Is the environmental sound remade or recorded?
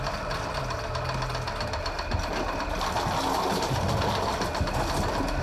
recorded